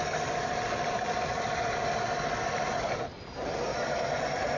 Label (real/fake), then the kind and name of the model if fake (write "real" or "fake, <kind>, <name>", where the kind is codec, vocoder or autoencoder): real